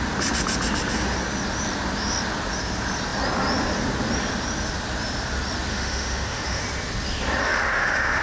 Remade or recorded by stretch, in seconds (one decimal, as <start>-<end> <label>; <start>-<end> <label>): 0.0-5.7 recorded; 5.7-6.6 remade; 6.6-7.4 recorded; 7.4-8.2 remade